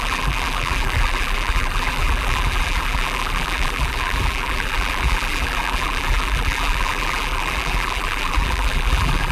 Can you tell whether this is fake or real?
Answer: fake